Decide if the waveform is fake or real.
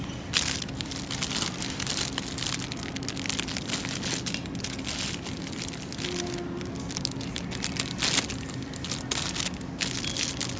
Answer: real